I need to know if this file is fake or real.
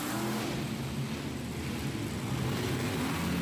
real